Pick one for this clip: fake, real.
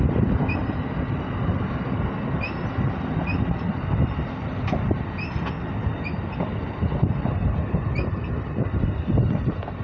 real